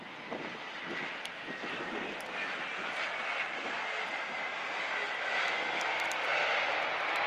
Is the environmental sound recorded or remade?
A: recorded